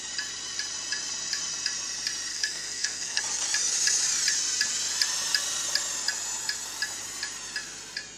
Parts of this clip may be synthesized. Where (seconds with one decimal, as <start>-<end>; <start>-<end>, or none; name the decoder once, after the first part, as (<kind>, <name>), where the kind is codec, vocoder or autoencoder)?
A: 2.3-3.2 (codec, SNAC)